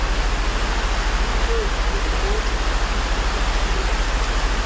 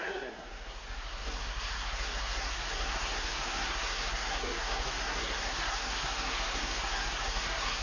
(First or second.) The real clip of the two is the first